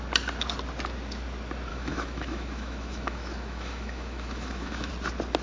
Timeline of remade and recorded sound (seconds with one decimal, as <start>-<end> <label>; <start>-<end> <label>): 0.0-1.7 recorded; 1.7-4.9 remade; 4.9-5.4 recorded